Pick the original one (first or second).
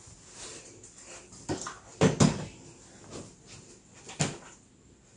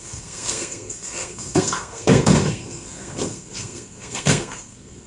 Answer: first